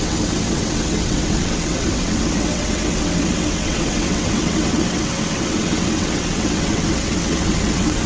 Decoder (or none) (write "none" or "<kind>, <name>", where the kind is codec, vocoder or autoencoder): vocoder, WaveNeXt